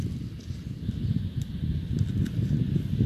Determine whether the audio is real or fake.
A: real